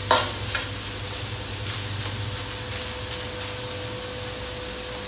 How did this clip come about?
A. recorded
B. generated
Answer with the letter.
A